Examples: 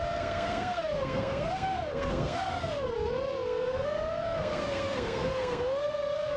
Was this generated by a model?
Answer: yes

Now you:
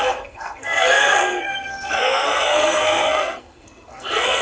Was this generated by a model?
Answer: yes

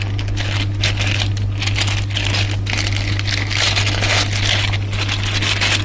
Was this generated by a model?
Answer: no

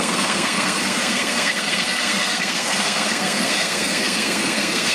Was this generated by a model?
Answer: yes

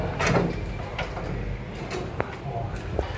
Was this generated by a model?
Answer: no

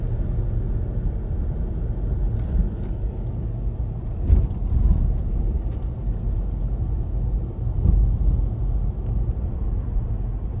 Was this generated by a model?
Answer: no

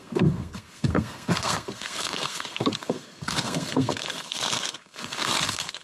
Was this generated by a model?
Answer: yes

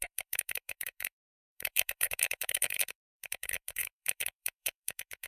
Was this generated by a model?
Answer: yes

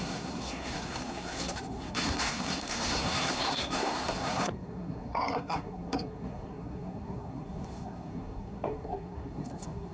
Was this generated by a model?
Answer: yes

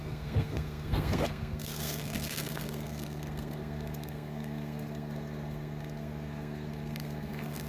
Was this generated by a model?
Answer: yes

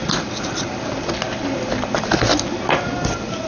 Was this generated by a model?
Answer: no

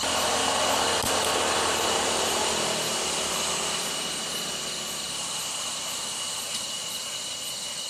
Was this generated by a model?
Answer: no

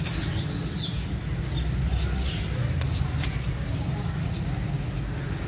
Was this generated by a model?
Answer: no